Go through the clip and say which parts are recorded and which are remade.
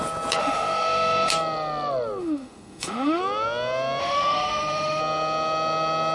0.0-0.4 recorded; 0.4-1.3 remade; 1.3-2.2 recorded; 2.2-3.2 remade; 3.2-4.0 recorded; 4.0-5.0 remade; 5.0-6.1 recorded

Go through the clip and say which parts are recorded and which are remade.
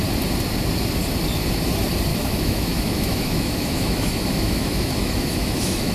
0.0-2.1 recorded; 2.1-5.9 remade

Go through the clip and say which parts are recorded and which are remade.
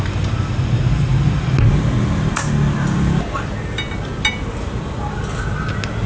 0.0-6.1 recorded